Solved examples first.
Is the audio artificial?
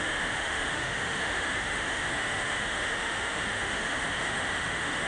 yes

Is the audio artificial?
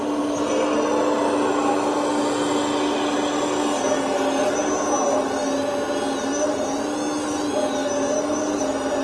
no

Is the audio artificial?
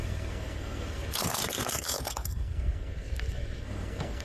yes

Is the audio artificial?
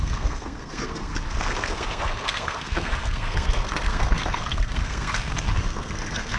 yes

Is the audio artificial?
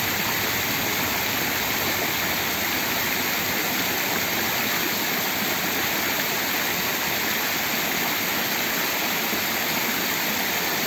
no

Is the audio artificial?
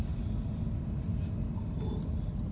no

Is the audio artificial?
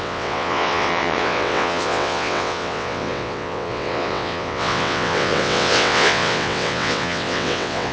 yes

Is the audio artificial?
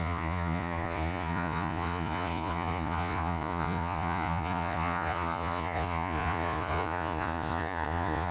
yes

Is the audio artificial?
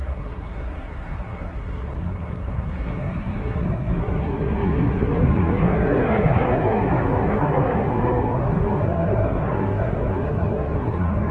yes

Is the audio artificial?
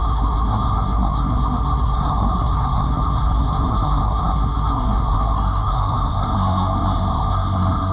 yes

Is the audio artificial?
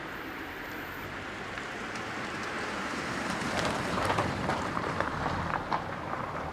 yes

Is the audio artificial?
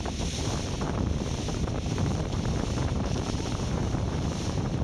yes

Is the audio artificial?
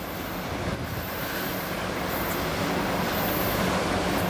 no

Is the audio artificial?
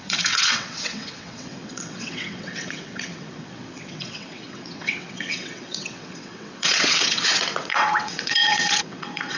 yes